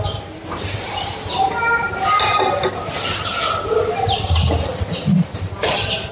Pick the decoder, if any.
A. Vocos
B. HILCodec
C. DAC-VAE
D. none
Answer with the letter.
D